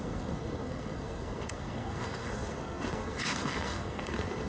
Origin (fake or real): fake